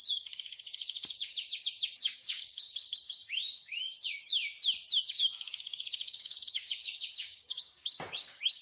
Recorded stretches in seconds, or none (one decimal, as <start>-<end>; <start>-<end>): 4.4-5.0